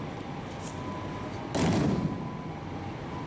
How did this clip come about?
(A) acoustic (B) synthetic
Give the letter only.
A